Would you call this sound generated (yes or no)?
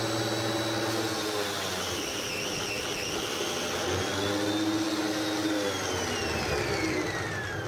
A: no